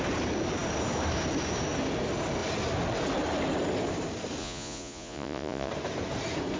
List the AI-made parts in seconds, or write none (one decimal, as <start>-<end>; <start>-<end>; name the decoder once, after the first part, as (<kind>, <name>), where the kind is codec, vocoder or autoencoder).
4.4-5.7 (vocoder, Vocos)